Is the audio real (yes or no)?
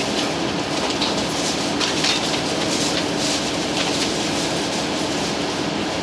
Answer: yes